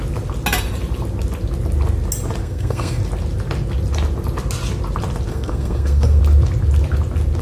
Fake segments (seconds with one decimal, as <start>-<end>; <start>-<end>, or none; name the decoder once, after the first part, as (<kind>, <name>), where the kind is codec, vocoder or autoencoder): 2.4-3.0 (codec, SNAC); 5.3-6.2